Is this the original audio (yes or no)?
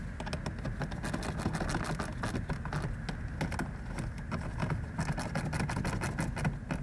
yes